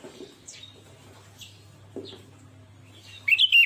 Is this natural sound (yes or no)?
yes